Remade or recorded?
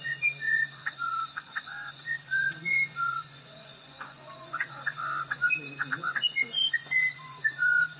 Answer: remade